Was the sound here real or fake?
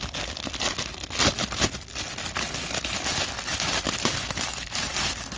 real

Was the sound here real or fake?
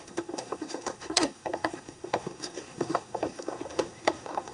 fake